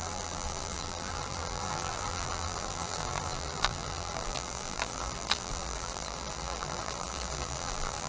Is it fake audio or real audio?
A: fake